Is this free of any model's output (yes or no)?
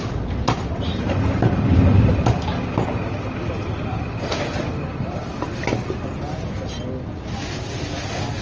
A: yes